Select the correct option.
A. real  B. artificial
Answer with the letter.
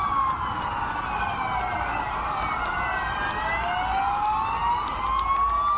A